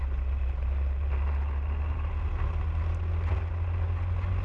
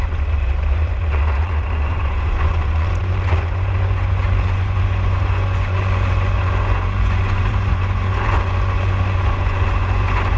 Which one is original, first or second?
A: first